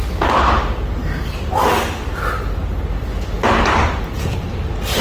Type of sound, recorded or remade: recorded